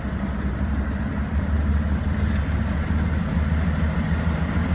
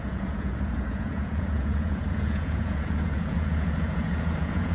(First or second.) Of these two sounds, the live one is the first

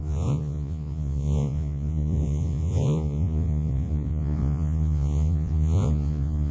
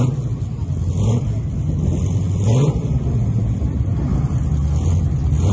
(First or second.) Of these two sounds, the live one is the second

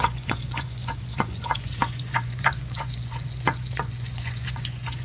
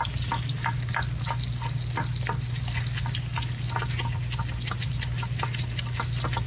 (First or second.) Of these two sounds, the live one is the second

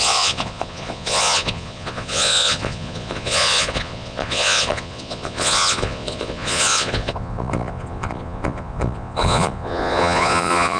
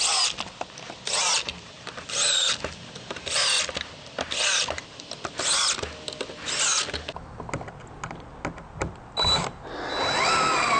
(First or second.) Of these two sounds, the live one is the second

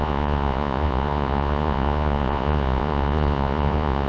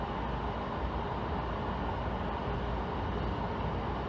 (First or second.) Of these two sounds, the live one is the second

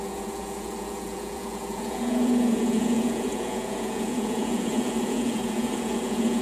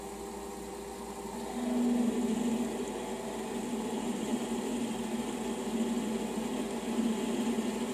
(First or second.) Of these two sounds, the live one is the second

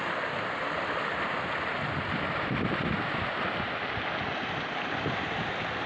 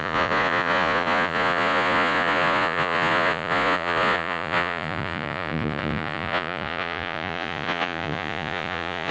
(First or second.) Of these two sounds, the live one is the first